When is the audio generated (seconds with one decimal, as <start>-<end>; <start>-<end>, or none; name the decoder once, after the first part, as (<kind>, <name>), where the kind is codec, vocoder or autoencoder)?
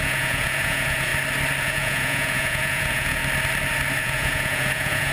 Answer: 0.0-1.1 (vocoder, Vocos); 1.6-3.2; 4.0-5.1